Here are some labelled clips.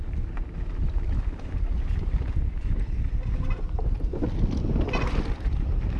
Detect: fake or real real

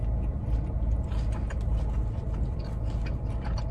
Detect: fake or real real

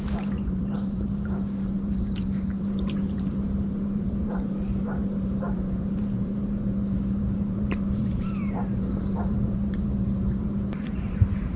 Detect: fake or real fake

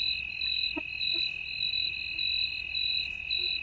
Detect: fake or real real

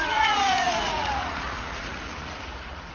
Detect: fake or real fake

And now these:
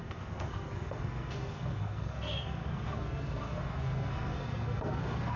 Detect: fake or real fake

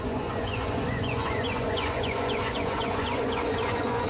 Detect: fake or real fake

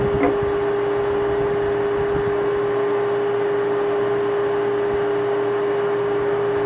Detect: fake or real real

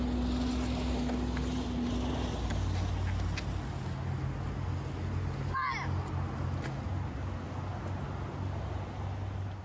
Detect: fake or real real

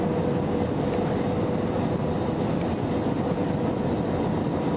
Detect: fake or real real